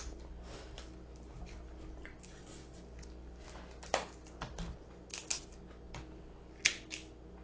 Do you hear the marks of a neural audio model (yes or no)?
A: no